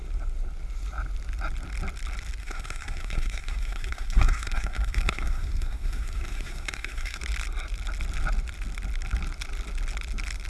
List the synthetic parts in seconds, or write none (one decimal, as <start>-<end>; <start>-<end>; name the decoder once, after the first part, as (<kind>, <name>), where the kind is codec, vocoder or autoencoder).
2.4-7.2 (codec, SNAC)